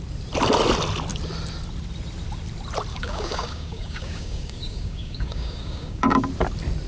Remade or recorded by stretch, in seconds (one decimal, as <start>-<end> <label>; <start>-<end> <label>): 0.0-2.9 recorded; 2.9-6.2 remade; 6.2-6.9 recorded